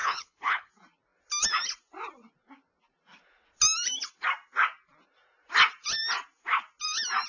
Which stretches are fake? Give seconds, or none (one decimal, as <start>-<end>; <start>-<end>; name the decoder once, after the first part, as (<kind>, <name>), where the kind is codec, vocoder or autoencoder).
0.0-0.7 (codec, HILCodec)

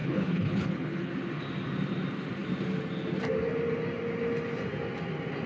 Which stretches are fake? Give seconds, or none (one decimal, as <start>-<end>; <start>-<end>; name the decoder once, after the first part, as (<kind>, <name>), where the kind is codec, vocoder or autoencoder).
0.0-1.1 (codec, HILCodec)

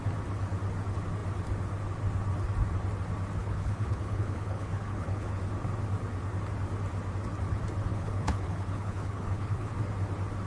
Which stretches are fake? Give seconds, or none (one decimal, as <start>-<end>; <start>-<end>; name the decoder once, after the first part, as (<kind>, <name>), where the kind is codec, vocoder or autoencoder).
3.4-5.4 (codec, HILCodec); 7.9-9.7

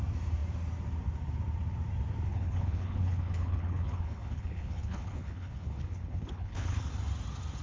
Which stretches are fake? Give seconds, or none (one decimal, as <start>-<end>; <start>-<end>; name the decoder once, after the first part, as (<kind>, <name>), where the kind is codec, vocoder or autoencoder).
2.3-6.9 (codec, HILCodec)